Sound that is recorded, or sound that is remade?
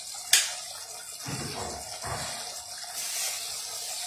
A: recorded